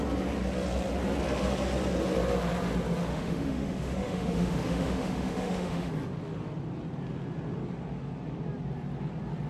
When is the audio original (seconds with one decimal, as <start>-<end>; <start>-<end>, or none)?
0.0-3.1; 5.9-9.5